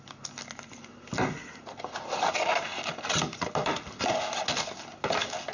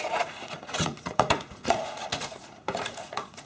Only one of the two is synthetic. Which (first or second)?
second